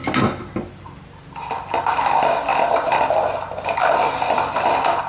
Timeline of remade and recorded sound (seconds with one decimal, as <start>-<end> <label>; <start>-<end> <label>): 0.0-5.1 recorded